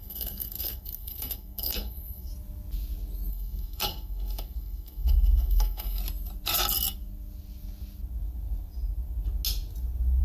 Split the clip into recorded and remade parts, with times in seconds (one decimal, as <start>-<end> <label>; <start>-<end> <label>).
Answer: 0.0-2.3 remade; 2.3-3.3 recorded; 3.3-6.0 remade; 6.0-10.2 recorded